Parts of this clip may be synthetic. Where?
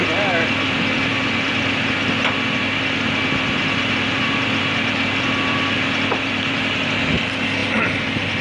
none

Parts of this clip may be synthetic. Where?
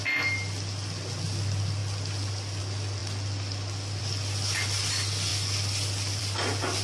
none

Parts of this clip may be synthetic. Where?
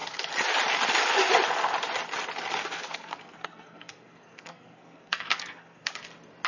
2.6-5.9 (codec, SNAC)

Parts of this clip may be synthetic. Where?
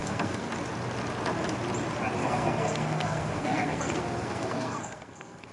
0.0-0.5 (codec, SNAC); 2.2-5.5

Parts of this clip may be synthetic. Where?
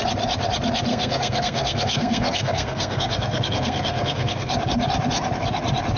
0.9-4.5 (codec, SNAC)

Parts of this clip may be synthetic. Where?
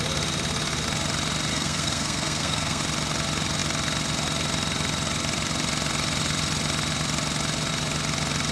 1.5-2.8 (codec, SNAC)